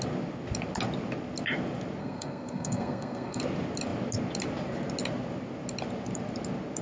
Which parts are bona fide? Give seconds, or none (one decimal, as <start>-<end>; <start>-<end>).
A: 0.0-2.0; 3.4-6.8